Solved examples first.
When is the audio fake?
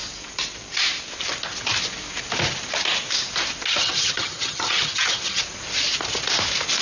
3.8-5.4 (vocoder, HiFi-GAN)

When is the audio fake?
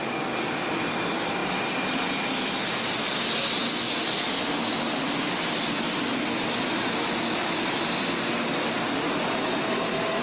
none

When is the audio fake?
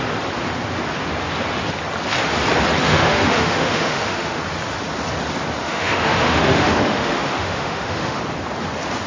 2.8-4.4 (autoencoder, DAC-VAE); 5.6-8.2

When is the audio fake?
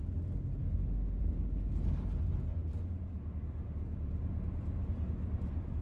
0.6-1.2 (autoencoder, DAC-VAE)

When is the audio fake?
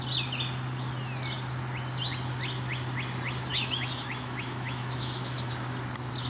3.5-5.5 (autoencoder, DAC-VAE)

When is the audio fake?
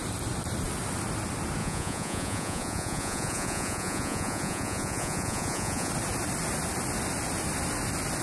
1.6-5.9 (vocoder, Vocos)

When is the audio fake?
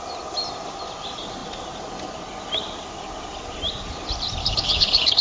4.4-5.2 (codec, HILCodec)